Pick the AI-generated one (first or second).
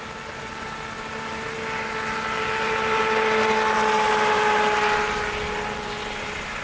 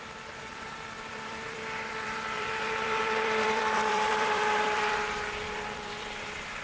second